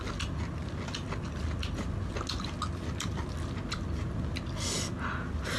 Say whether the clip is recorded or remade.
recorded